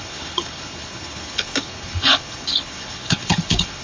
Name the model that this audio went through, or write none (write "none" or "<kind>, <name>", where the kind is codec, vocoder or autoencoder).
codec, HILCodec